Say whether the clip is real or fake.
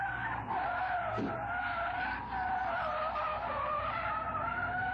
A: real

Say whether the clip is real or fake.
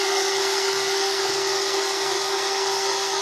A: fake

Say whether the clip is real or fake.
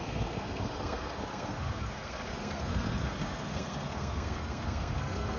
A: fake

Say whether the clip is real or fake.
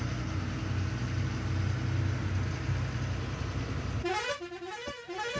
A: real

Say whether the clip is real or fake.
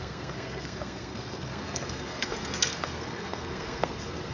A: fake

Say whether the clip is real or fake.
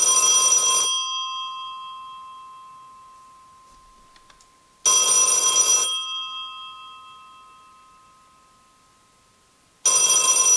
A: real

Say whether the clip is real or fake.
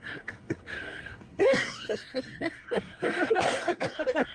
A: fake